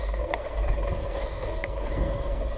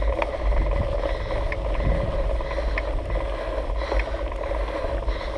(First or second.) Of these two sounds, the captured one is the second